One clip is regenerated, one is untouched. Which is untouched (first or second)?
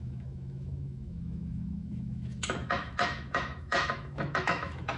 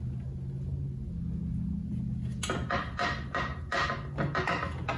second